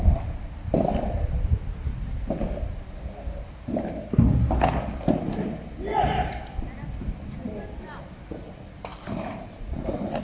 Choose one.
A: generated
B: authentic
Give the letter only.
B